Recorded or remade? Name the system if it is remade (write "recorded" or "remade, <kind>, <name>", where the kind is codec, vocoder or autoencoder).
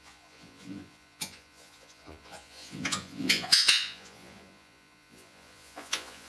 remade, vocoder, Vocos